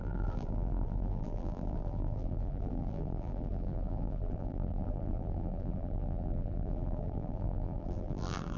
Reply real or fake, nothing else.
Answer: fake